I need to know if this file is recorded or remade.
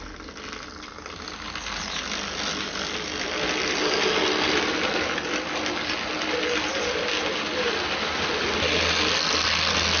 recorded